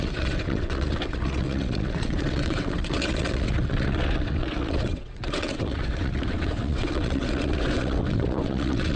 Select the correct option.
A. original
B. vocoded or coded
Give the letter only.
B